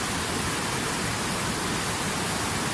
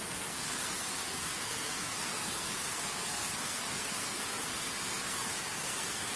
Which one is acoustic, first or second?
first